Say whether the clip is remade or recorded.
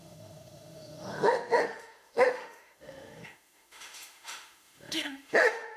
remade